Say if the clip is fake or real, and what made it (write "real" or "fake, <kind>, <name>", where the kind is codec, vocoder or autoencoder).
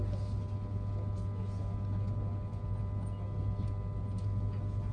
real